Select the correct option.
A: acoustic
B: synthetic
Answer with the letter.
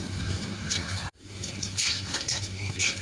B